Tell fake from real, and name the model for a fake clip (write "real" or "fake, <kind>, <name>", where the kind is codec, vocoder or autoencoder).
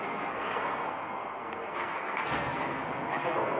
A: fake, codec, SNAC